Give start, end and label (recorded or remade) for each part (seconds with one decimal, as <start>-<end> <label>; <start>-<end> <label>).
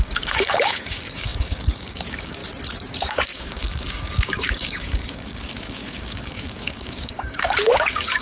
0.0-2.4 remade; 2.4-2.9 recorded; 2.9-8.2 remade